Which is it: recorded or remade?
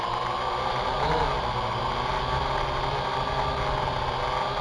recorded